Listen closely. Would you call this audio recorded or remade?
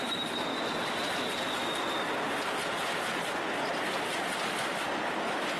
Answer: recorded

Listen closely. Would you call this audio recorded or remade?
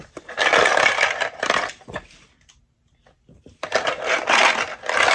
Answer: recorded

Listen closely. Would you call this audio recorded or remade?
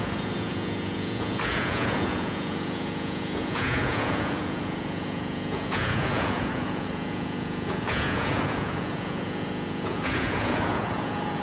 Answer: remade